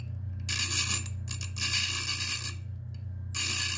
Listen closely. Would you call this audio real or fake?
real